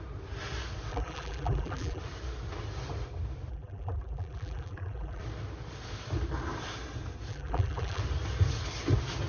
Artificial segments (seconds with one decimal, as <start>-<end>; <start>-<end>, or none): 0.9-2.0; 3.5-5.2; 7.3-8.0